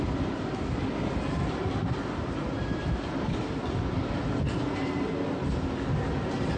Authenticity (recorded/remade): recorded